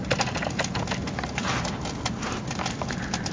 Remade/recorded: recorded